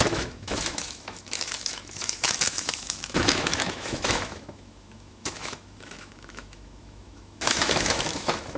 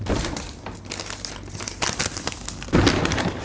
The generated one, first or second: first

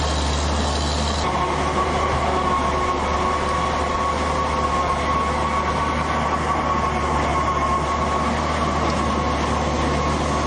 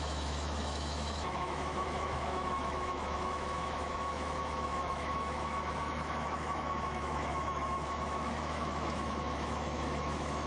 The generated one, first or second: second